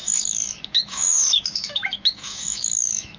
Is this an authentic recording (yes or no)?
no